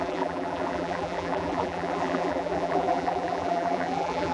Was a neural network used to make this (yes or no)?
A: yes